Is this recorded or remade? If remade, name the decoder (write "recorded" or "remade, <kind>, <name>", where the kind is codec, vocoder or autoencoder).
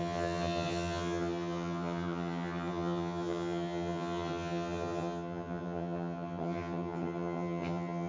remade, vocoder, HiFi-GAN